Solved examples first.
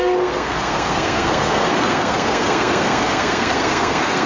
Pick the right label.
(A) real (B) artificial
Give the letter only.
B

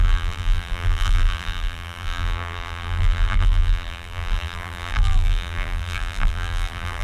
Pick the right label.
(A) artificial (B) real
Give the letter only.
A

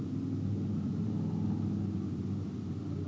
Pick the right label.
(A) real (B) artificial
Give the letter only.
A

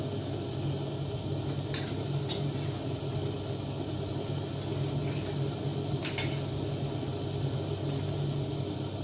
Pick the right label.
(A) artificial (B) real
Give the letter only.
B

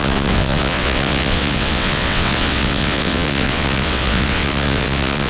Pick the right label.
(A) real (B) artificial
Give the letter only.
B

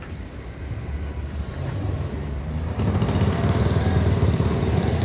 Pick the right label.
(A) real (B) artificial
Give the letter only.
B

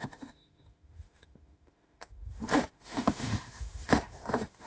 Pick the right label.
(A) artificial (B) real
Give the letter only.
A